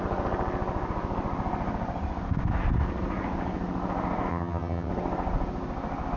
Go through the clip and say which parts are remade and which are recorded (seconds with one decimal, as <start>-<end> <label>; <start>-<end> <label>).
0.0-4.3 recorded; 4.3-4.9 remade; 4.9-6.2 recorded